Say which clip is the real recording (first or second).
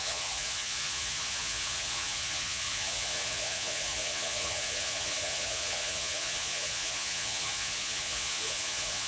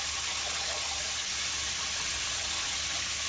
second